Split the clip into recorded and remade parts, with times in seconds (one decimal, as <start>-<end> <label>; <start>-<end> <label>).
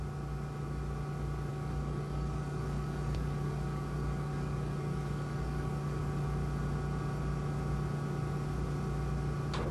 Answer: 0.0-1.5 recorded; 1.5-6.0 remade; 6.0-9.7 recorded